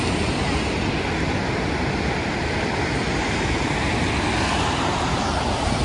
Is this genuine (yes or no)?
yes